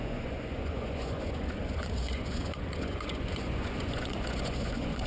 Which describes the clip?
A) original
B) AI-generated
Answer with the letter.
B